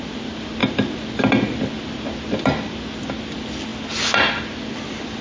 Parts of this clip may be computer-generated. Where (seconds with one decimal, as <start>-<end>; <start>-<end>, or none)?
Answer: none